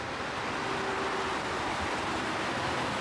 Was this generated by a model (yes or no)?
no